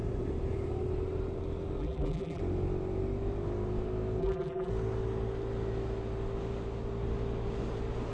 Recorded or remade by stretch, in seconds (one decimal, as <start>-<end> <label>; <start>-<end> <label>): 0.0-1.8 recorded; 1.8-2.4 remade; 2.4-4.2 recorded; 4.2-4.7 remade; 4.7-8.1 recorded